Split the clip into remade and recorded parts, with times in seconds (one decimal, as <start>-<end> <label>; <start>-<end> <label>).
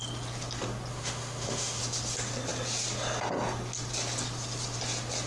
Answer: 0.0-0.9 recorded; 0.9-1.8 remade; 1.8-5.3 recorded